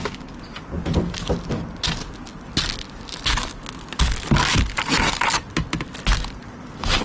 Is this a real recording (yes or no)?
yes